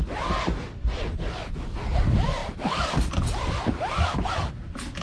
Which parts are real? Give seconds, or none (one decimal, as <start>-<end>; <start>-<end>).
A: 0.0-5.0